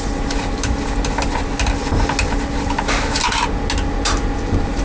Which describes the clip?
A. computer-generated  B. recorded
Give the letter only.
B